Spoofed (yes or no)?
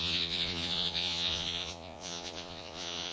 yes